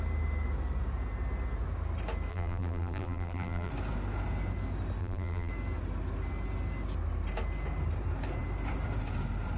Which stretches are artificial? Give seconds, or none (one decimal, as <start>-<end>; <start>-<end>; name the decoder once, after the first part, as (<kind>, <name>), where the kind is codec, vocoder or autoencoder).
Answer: 2.3-3.7 (vocoder, BigVGAN v2); 5.0-5.5